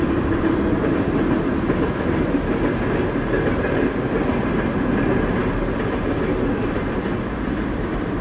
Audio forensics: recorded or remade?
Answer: recorded